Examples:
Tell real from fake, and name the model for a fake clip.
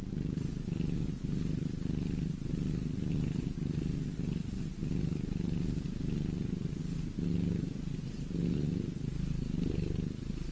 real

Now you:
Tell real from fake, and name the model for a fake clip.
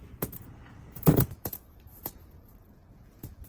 fake, vocoder, Vocos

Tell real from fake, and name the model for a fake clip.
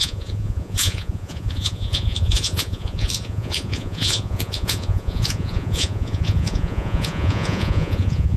fake, vocoder, Vocos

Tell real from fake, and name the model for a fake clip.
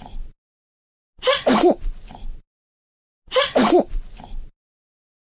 real